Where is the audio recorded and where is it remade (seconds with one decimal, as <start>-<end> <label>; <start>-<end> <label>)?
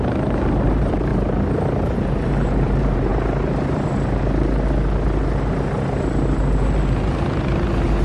0.0-1.1 remade; 1.1-1.9 recorded; 1.9-3.1 remade; 3.1-8.0 recorded